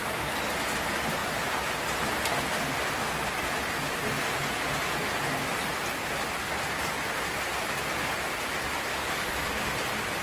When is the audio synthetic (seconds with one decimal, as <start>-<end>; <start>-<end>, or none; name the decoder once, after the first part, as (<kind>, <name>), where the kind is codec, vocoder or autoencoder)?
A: 8.9-9.4 (codec, DAC)